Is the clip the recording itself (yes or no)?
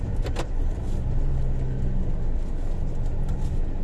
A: yes